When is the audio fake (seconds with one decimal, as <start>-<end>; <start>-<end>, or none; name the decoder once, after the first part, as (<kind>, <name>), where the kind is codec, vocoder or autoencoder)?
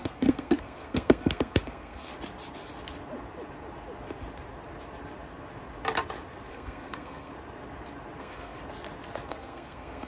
0.0-2.1 (codec, SNAC); 6.5-7.3; 8.2-8.6; 9.3-10.1